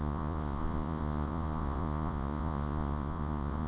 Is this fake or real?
fake